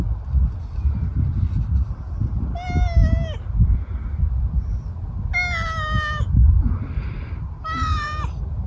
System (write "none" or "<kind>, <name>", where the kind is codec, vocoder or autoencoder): none